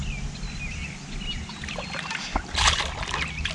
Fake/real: real